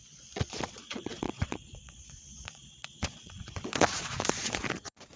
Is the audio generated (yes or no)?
yes